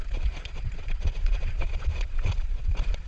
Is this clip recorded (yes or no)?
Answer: no